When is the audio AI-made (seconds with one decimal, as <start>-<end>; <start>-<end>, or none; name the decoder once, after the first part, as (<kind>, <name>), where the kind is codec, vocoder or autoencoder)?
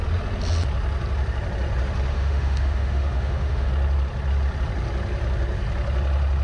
2.1-3.7 (autoencoder, DAC-VAE)